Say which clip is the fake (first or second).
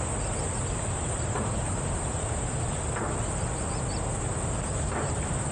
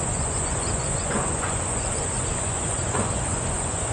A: second